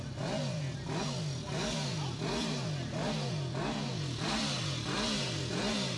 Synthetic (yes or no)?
no